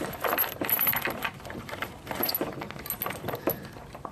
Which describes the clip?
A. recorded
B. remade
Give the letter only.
A